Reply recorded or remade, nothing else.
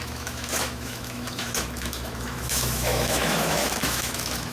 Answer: remade